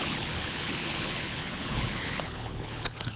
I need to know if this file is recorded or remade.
remade